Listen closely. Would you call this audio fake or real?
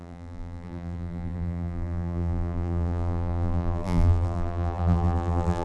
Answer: fake